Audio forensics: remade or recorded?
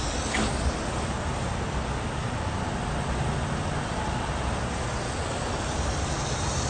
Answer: recorded